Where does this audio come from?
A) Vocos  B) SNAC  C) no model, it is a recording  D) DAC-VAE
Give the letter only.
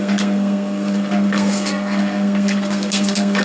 B